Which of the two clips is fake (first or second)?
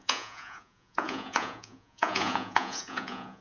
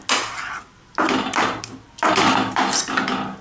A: first